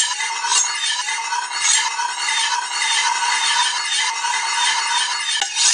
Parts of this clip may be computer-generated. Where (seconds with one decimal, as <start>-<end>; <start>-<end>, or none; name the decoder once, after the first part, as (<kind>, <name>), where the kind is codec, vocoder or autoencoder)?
none